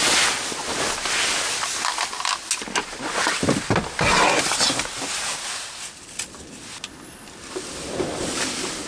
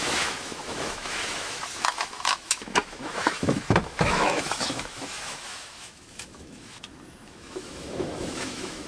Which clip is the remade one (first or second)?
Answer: second